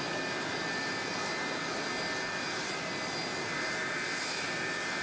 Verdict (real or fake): real